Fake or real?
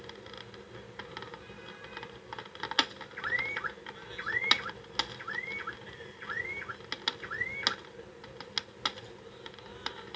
real